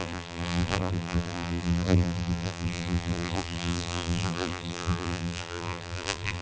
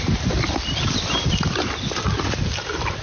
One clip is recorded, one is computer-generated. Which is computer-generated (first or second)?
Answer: first